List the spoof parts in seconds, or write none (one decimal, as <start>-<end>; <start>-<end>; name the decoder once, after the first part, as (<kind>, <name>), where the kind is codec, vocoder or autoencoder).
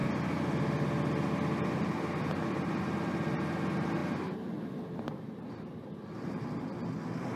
none